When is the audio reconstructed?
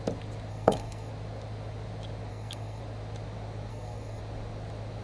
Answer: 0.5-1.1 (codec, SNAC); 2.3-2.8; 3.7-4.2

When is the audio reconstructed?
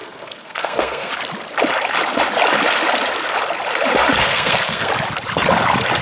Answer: 0.0-1.1 (codec, SNAC); 4.2-4.9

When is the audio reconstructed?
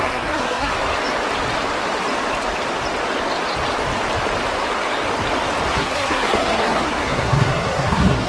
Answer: 0.0-0.7 (codec, SNAC); 5.7-8.3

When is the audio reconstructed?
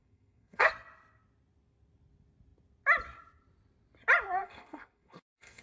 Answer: 0.0-0.7 (codec, SNAC); 4.4-5.6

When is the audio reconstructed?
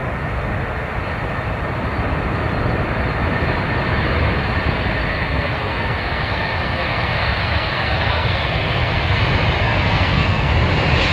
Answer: 5.1-9.2 (codec, SNAC); 9.6-10.5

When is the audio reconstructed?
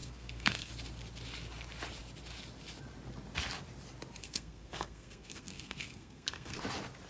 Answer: 0.0-0.7 (codec, SNAC); 4.2-6.6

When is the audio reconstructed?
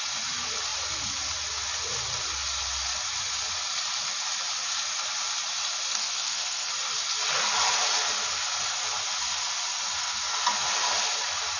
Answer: 5.9-6.7 (codec, SNAC)